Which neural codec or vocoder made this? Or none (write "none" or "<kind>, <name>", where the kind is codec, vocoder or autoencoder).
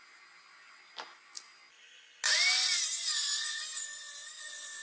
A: none